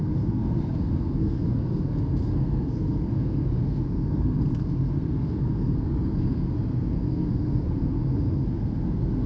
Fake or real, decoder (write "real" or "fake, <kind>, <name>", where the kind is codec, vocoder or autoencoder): fake, codec, SNAC